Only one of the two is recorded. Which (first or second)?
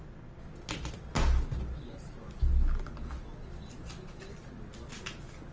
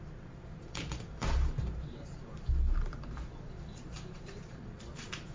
first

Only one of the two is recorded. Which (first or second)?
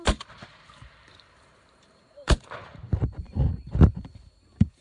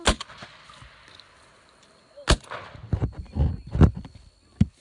second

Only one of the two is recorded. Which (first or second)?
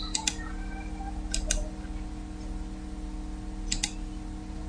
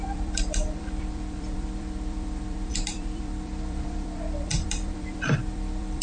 first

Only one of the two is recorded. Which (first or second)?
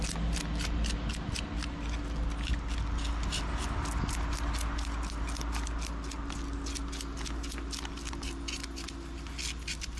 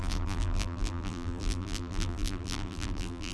first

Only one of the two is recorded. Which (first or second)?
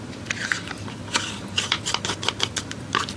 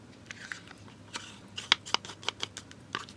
second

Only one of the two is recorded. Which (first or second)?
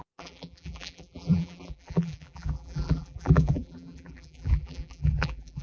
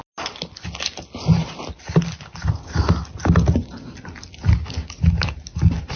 second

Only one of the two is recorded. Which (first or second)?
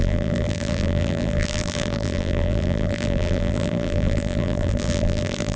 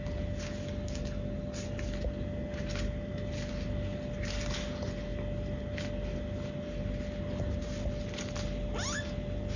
second